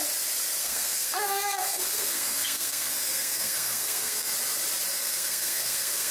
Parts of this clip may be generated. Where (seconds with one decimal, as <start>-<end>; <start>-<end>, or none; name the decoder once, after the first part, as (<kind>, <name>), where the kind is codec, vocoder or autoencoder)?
0.6-4.3 (codec, SNAC); 4.9-6.1